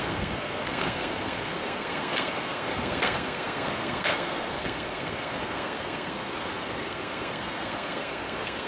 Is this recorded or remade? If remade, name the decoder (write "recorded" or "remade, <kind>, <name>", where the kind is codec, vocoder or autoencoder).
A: remade, codec, SNAC